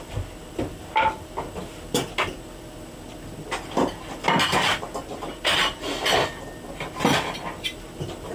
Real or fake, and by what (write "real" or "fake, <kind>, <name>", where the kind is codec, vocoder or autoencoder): real